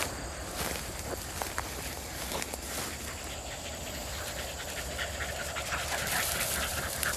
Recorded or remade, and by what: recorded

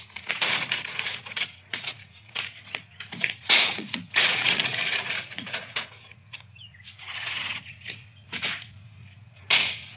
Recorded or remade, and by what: remade, vocoder, Vocos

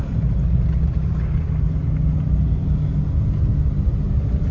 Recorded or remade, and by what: recorded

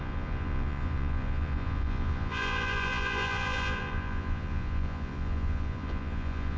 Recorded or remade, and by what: remade, vocoder, Vocos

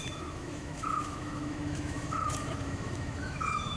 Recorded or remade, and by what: remade, autoencoder, DAC-VAE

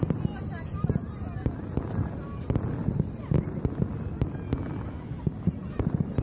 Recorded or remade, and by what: recorded